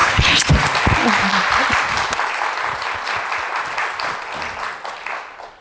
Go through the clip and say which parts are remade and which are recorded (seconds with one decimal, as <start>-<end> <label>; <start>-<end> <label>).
0.0-0.5 remade; 0.5-5.6 recorded